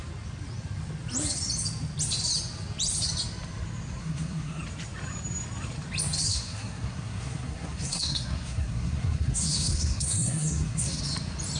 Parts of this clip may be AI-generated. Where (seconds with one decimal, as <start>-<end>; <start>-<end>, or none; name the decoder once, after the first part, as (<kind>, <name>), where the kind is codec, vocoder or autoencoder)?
4.0-4.6 (codec, SNAC); 6.3-11.0